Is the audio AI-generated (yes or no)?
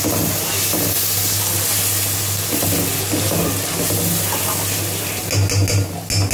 no